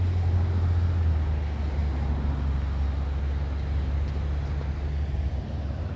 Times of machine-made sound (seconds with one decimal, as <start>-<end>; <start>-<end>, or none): none